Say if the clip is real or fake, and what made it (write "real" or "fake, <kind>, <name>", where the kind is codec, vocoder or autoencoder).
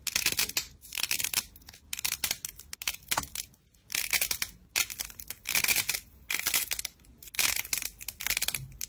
real